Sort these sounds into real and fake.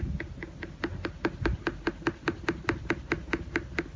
real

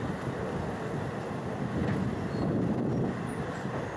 real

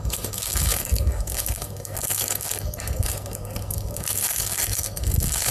fake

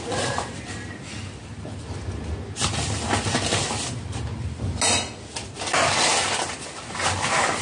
real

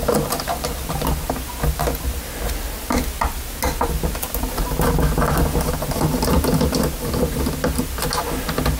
real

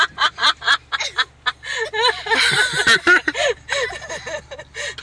real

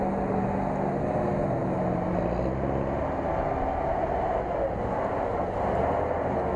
real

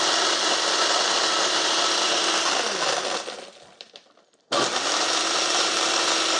real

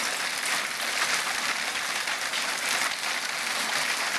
real